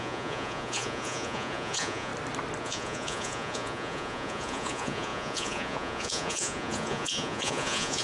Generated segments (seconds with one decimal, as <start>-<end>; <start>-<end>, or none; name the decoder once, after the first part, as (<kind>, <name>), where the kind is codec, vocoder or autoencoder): 0.0-2.1 (vocoder, Vocos); 2.6-8.0

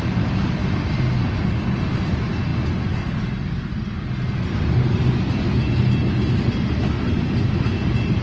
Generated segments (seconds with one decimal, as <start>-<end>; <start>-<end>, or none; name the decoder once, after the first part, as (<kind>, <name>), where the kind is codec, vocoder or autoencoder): none

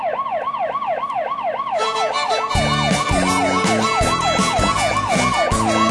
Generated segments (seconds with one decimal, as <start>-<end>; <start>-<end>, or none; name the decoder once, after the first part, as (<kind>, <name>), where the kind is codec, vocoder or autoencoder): none

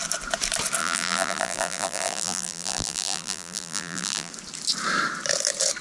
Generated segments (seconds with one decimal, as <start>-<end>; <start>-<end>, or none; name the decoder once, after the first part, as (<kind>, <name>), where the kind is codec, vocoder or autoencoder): 0.8-4.3 (vocoder, BigVGAN v2)

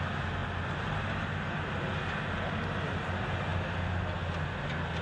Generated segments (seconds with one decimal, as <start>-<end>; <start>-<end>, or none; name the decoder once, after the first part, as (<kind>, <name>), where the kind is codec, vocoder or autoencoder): none

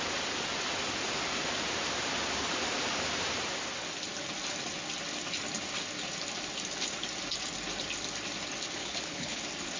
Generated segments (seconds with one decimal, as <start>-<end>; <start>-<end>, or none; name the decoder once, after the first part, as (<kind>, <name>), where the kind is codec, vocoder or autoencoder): 8.8-9.4 (codec, HILCodec)